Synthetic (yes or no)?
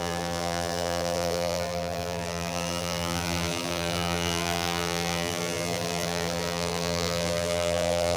yes